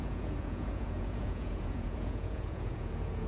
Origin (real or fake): fake